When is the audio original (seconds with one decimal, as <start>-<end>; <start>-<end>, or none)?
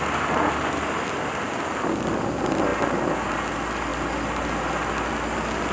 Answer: 0.0-5.7